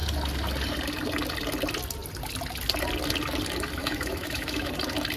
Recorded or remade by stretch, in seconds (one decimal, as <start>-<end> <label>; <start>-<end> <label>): 0.0-3.8 recorded; 3.8-4.7 remade; 4.7-5.2 recorded